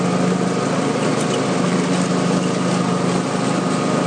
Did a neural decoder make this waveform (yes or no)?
no